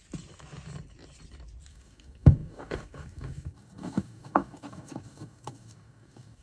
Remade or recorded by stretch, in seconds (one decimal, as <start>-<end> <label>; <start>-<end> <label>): 0.0-1.7 recorded; 1.7-6.4 remade